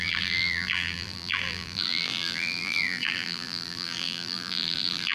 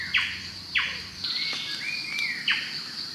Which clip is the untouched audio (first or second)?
second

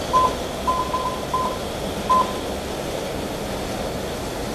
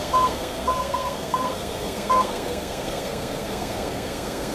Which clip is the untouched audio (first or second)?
first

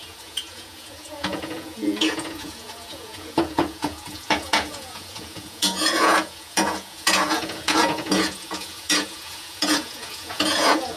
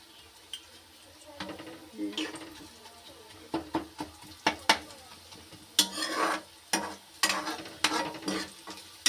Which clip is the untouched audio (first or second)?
second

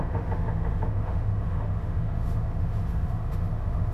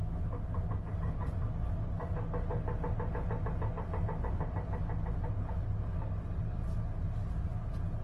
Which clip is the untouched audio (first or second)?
second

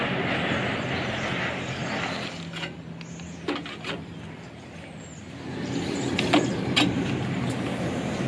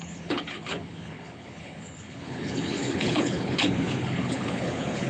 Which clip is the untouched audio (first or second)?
first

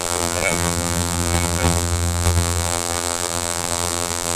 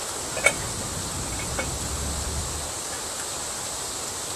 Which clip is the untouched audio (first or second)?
second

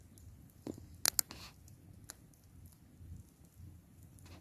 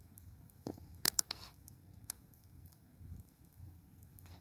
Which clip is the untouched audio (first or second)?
first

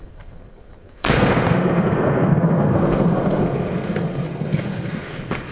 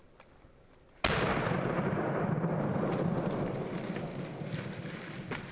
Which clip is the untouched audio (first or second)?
second